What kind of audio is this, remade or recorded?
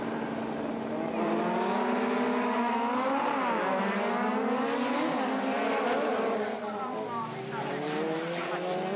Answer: recorded